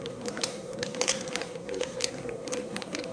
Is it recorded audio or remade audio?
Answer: remade